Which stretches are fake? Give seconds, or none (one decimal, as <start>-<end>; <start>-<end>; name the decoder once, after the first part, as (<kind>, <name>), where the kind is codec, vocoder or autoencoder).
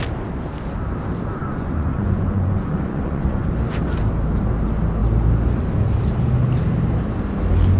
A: 1.4-3.5 (vocoder, Vocos)